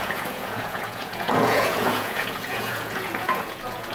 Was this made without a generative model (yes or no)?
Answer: no